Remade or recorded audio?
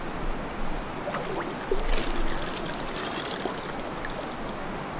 recorded